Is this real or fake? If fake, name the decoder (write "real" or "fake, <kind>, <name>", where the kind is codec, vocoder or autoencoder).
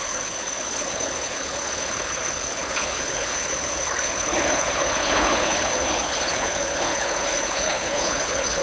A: fake, codec, HILCodec